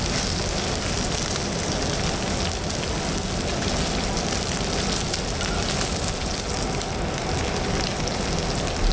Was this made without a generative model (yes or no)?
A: yes